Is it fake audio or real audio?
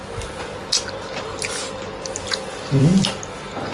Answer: real